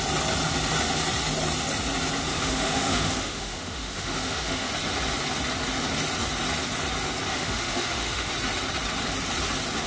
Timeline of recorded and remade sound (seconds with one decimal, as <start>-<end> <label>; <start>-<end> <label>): 0.0-2.3 recorded; 2.3-4.7 remade; 4.7-7.3 recorded; 7.3-8.3 remade; 8.3-9.9 recorded